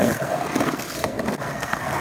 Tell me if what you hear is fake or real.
fake